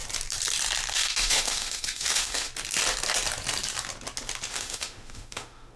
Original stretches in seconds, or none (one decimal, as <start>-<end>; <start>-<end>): 0.0-0.9; 2.5-4.5